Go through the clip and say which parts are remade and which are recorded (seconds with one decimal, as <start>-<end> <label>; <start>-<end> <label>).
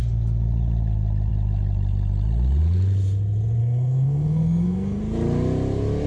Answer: 0.0-3.6 recorded; 3.6-5.0 remade; 5.0-6.1 recorded